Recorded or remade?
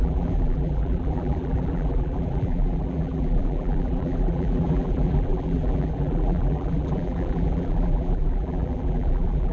remade